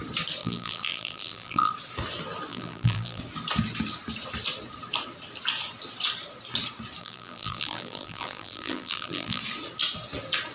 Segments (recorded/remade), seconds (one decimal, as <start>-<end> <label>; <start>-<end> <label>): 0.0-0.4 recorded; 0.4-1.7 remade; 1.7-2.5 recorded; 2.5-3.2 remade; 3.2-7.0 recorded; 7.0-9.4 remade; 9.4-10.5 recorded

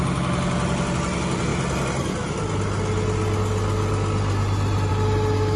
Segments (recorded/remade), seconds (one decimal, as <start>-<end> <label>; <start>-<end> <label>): 0.0-5.6 recorded

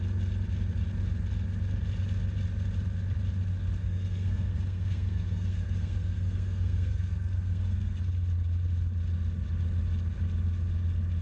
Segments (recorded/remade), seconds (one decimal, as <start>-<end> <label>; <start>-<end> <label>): 0.0-3.8 recorded; 3.8-8.0 remade; 8.0-11.2 recorded

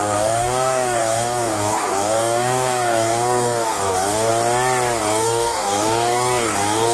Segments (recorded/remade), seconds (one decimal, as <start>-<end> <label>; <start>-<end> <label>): 0.0-4.3 remade; 4.3-5.0 recorded; 5.0-6.9 remade

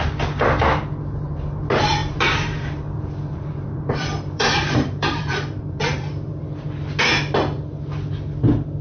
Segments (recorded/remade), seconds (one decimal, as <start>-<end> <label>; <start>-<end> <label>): 0.0-2.0 recorded; 2.0-6.4 remade; 6.4-8.8 recorded

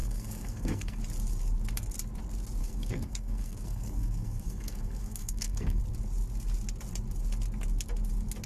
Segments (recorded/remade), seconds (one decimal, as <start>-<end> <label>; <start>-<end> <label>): 0.0-1.0 remade; 1.0-2.6 recorded; 2.6-5.8 remade; 5.8-8.5 recorded

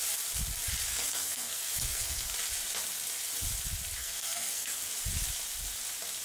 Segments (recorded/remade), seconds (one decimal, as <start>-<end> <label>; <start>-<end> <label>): 0.0-0.9 recorded; 0.9-2.3 remade; 2.3-4.0 recorded; 4.0-4.9 remade; 4.9-6.2 recorded